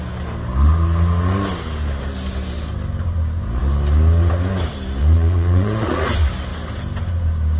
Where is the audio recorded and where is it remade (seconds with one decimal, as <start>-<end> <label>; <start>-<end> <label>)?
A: 0.0-5.0 recorded; 5.0-6.1 remade; 6.1-7.6 recorded